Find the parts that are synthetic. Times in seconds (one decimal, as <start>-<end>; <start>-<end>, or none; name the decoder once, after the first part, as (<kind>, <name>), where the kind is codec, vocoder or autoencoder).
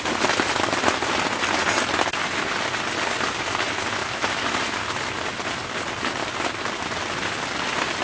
none